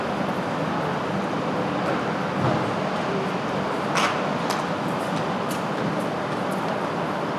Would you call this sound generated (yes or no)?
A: no